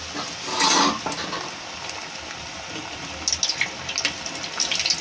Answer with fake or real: real